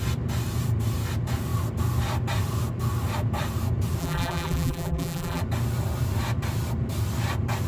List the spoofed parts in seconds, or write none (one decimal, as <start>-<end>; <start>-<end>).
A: 4.0-5.4